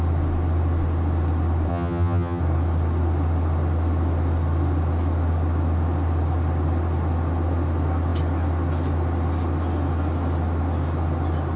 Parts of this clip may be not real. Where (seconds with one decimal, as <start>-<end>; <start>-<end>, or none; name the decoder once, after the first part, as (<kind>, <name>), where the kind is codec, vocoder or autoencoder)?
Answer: 1.7-2.4 (vocoder, HiFi-GAN)